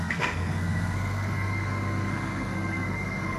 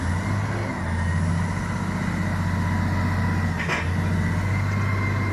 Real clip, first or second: second